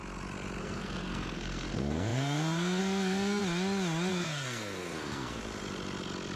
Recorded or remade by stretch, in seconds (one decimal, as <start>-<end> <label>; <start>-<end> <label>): 0.0-0.6 recorded; 0.6-3.4 remade; 3.4-4.1 recorded; 4.1-5.4 remade; 5.4-6.4 recorded